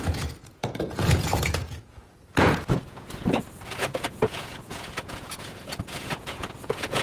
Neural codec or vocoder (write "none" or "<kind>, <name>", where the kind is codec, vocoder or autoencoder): vocoder, Vocos